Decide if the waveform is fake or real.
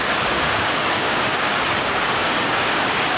fake